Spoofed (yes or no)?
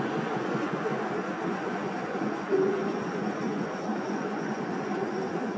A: yes